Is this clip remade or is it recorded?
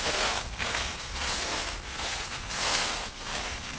remade